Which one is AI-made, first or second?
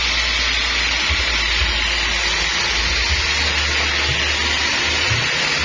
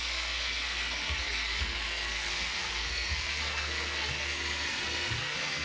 second